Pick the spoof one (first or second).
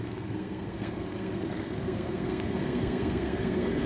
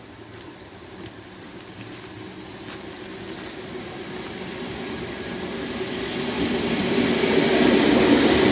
first